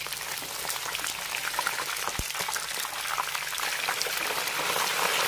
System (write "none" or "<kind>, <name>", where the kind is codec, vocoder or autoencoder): none